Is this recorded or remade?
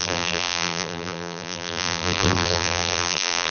remade